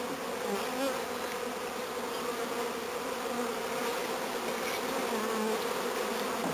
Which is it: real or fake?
real